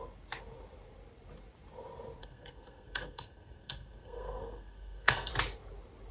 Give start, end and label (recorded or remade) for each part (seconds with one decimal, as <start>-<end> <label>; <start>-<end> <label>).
0.0-2.2 recorded; 2.2-5.3 remade; 5.3-6.1 recorded